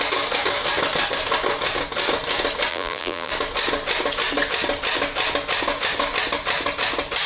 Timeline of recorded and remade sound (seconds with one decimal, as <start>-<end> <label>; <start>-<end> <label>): 0.0-2.7 recorded; 2.7-3.3 remade; 3.3-7.3 recorded